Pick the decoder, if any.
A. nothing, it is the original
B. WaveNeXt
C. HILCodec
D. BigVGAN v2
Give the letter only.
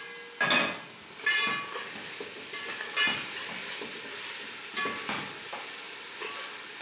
A